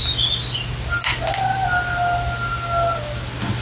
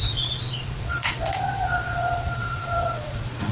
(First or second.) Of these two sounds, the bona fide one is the first